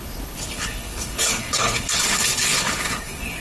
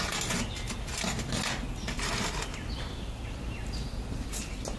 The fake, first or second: first